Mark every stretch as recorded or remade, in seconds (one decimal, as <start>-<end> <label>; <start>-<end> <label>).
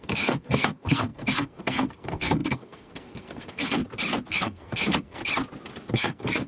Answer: 0.0-3.8 remade; 3.8-4.3 recorded; 4.3-5.2 remade; 5.2-5.9 recorded; 5.9-6.5 remade